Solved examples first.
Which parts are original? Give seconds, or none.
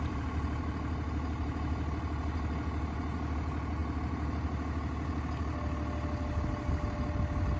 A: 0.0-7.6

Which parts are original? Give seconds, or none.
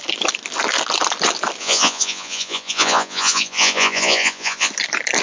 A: 0.0-1.6; 4.7-5.2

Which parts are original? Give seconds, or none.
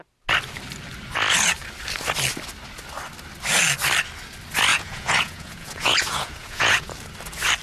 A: 0.0-4.7; 6.9-7.6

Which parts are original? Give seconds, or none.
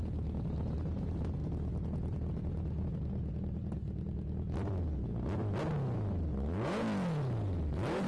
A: 0.0-8.1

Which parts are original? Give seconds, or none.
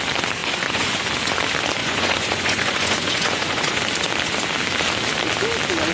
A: 0.0-0.4; 1.0-1.8; 3.8-5.9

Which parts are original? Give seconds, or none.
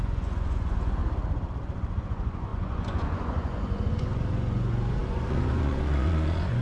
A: 1.0-2.0